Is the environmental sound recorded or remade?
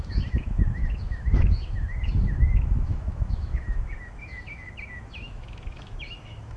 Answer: remade